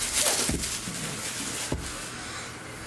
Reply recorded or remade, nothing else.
recorded